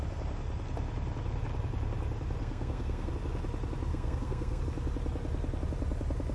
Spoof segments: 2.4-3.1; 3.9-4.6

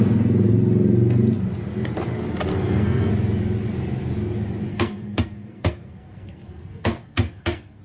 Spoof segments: 2.5-3.1; 4.7-7.8